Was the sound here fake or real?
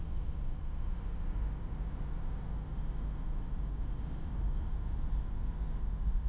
real